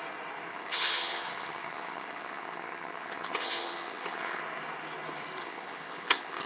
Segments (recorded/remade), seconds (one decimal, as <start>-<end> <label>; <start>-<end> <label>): 0.0-0.5 recorded; 0.5-4.4 remade; 4.4-5.4 recorded; 5.4-6.5 remade